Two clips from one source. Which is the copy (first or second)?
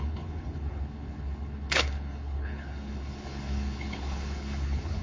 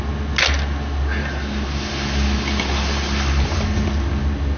first